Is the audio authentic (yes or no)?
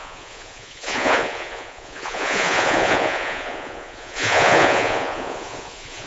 no